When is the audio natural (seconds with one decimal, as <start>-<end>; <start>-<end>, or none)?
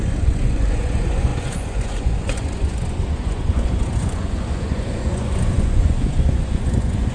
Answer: none